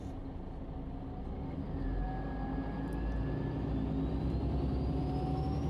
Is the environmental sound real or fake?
real